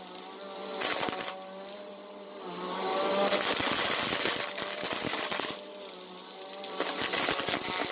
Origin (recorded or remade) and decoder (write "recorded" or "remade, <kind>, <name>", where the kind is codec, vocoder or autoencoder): recorded